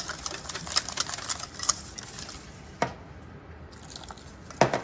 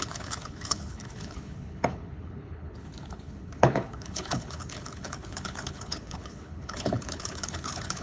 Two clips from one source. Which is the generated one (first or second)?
second